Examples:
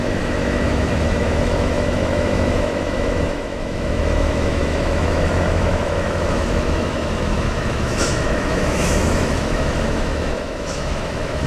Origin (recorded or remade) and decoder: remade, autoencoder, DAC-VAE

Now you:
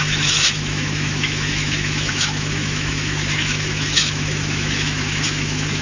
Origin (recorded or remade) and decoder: remade, autoencoder, DAC-VAE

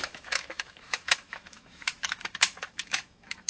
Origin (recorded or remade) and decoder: remade, autoencoder, DAC-VAE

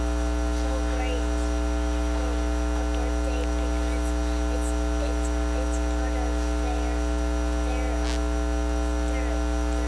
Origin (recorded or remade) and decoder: recorded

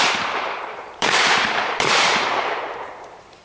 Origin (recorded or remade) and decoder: remade, vocoder, BigVGAN v2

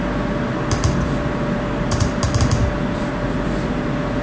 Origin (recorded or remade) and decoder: recorded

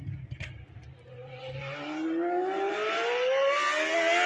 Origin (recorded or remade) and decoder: recorded